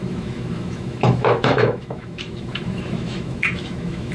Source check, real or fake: fake